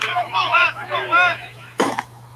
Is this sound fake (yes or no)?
yes